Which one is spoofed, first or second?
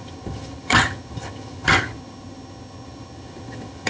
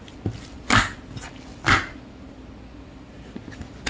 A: first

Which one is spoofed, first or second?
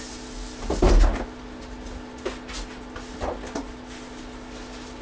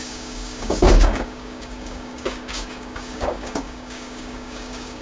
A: second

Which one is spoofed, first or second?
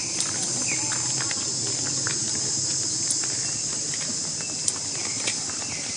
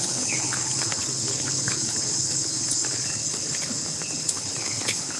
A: second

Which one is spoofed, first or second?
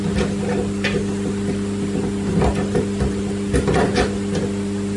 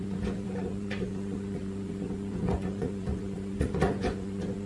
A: second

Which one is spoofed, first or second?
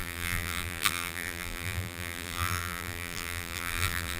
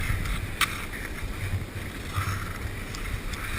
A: first